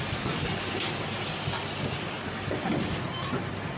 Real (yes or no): yes